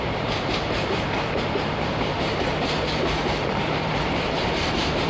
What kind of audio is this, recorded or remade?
remade